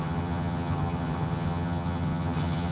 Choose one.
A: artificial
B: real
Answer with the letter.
A